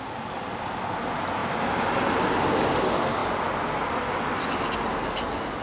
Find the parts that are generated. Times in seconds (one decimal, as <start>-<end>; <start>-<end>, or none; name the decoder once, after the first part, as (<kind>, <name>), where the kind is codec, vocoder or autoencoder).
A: none